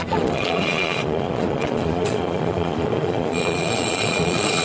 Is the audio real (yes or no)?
no